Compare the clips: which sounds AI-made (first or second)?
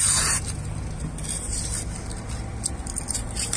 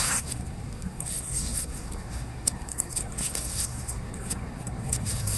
second